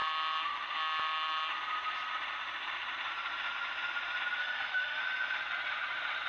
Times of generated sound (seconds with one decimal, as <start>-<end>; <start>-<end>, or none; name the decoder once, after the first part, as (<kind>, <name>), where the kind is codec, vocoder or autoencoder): 4.4-5.0 (autoencoder, DAC-VAE)